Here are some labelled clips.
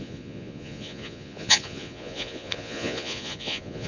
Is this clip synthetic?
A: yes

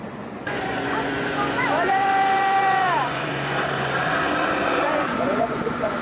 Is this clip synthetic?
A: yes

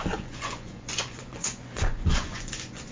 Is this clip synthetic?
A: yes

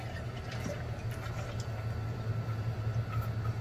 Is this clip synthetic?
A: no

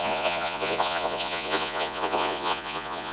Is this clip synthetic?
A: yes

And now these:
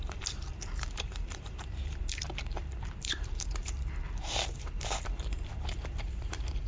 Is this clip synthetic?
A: yes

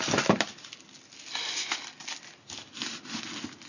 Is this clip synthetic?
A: no